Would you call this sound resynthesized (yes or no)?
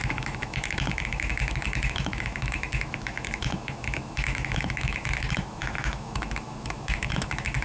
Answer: yes